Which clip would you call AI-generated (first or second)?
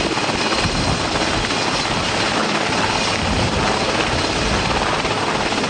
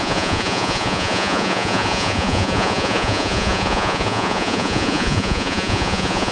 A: second